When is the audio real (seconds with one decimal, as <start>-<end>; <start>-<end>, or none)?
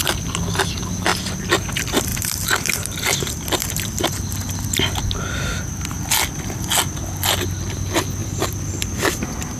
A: 0.0-1.1; 1.7-8.2; 8.7-9.6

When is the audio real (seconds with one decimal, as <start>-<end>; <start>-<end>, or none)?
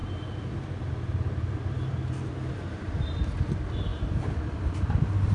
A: 2.9-3.9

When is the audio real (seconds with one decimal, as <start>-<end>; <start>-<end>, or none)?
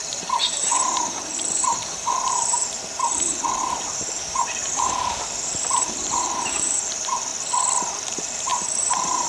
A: 7.3-7.9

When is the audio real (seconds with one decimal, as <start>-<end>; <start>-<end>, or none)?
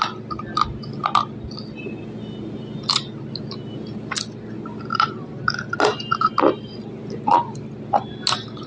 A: 0.0-4.9; 5.4-5.9; 6.8-8.7